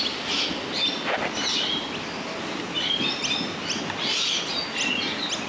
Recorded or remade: recorded